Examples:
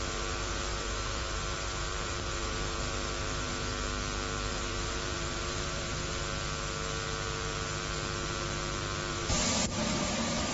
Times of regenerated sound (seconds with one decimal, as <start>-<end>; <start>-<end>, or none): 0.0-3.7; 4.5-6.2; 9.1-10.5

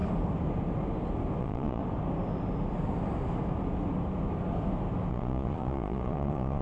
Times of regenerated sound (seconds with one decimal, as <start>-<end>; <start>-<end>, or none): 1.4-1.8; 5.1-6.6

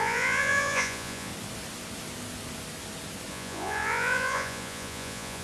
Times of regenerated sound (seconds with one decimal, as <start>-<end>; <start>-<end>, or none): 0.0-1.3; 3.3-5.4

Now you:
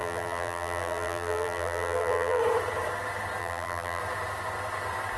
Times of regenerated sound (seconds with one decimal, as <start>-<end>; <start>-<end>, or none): 0.0-2.4; 3.4-4.0